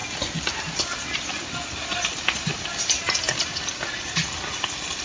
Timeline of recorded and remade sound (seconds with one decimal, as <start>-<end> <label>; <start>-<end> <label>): 0.0-5.0 recorded